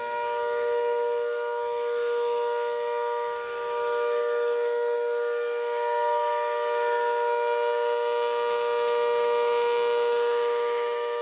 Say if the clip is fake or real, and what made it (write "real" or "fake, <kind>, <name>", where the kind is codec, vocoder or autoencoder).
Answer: fake, autoencoder, DAC-VAE